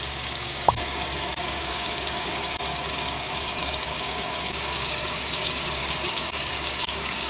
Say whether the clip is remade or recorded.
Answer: remade